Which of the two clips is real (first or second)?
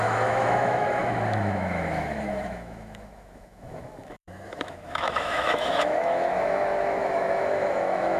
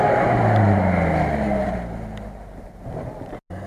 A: second